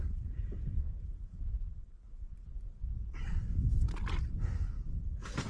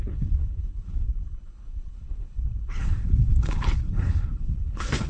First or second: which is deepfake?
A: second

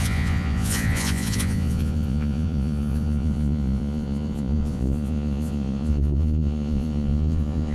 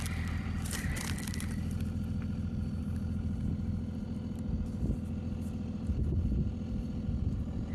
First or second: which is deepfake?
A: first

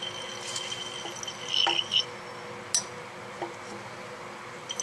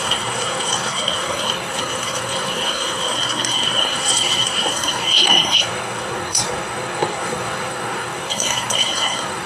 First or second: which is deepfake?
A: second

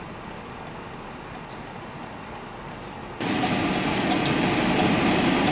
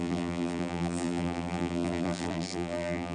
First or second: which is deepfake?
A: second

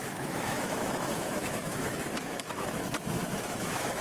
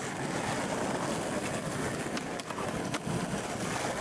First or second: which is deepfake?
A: first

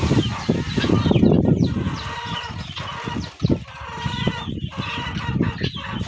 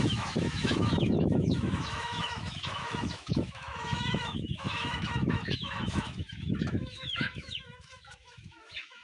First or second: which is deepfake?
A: second